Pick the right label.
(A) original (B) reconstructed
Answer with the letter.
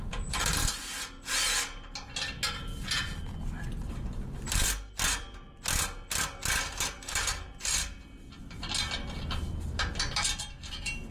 A